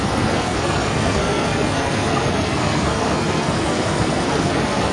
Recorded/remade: remade